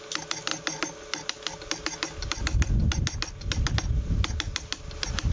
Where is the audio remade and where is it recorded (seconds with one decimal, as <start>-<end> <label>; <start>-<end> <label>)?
0.0-5.3 recorded